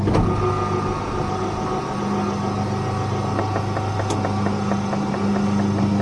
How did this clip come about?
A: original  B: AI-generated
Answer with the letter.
A